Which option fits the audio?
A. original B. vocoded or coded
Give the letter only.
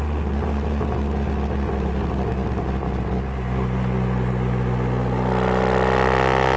A